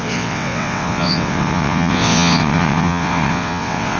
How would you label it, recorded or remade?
remade